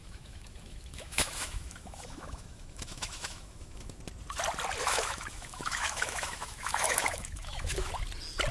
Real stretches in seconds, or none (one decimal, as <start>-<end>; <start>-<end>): 4.0-4.8; 7.9-8.5

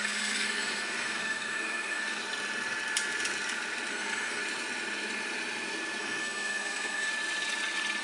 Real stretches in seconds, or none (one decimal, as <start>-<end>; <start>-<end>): 2.2-3.9; 4.4-6.0; 7.1-8.0

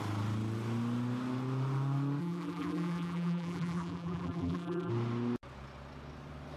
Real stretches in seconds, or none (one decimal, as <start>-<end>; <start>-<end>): 0.0-2.2; 4.9-6.6

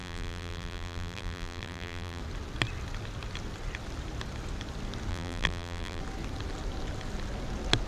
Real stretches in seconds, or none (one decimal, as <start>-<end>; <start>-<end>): 2.2-5.1; 6.0-7.9

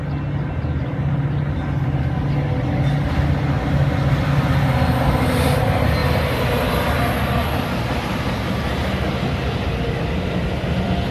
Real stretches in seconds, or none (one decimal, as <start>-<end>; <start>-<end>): 0.0-11.1

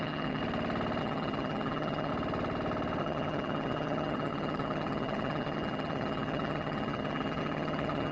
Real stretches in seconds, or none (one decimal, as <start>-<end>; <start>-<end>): 0.4-1.0; 2.1-3.0

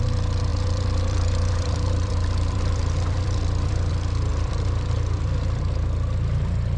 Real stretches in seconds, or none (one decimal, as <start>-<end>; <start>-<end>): 0.0-0.5; 3.9-4.3; 5.6-6.8

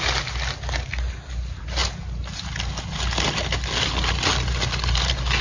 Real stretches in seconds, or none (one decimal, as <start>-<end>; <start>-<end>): 0.0-5.4